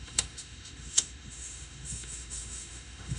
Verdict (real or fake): fake